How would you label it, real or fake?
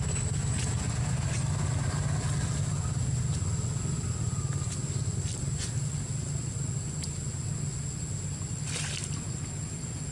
real